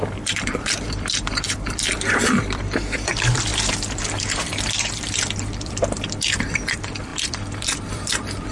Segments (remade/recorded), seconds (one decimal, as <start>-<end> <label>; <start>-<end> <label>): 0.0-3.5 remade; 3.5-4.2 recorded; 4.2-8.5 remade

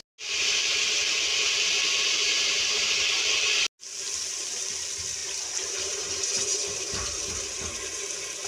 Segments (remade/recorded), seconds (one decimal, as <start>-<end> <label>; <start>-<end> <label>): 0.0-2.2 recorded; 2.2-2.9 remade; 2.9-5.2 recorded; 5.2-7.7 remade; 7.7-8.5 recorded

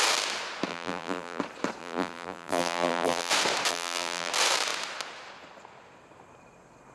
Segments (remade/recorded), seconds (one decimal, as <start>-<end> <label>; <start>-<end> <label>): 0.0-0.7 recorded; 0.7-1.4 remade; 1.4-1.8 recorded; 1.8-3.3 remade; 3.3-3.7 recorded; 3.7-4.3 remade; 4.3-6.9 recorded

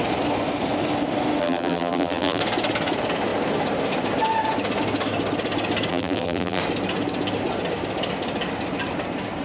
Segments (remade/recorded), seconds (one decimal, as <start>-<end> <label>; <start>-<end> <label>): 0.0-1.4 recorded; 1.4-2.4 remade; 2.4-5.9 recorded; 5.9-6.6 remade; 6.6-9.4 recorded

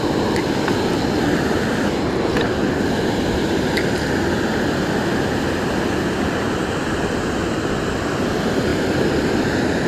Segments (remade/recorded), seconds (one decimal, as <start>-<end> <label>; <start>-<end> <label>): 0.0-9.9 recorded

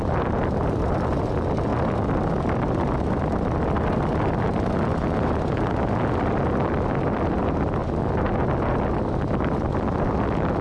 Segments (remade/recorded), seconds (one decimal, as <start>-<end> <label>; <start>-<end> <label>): 0.0-1.7 remade; 1.7-5.7 recorded; 5.7-7.8 remade; 7.8-9.0 recorded; 9.0-10.6 remade

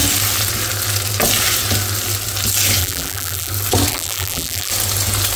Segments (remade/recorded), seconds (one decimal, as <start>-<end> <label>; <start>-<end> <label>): 0.0-2.8 recorded; 2.8-3.5 remade; 3.5-3.9 recorded; 3.9-4.7 remade; 4.7-5.4 recorded